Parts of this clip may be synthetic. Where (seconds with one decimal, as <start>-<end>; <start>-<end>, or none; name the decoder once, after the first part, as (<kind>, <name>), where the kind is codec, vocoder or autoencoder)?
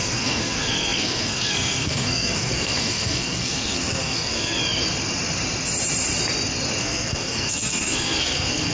0.0-4.6 (codec, SNAC); 6.8-8.7